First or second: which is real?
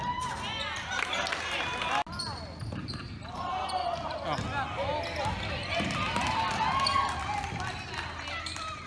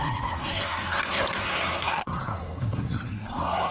first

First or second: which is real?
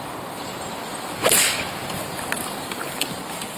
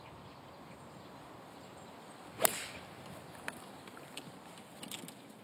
second